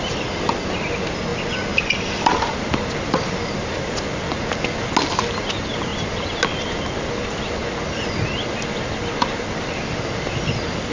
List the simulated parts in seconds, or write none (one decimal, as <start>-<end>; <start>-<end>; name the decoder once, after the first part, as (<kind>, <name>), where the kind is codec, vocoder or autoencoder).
none